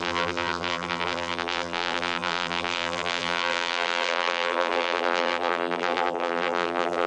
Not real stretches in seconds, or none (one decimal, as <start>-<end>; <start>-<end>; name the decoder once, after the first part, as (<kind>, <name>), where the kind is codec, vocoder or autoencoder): 0.0-7.1 (vocoder, BigVGAN v2)